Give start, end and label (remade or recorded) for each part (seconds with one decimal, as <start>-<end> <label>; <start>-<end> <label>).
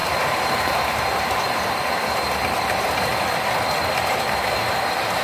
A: 0.0-3.1 remade; 3.1-4.1 recorded; 4.1-5.2 remade